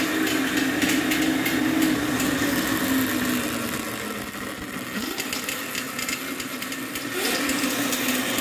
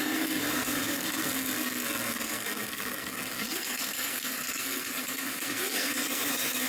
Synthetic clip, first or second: second